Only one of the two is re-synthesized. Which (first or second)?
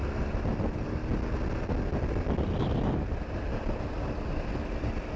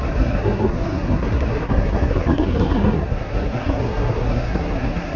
second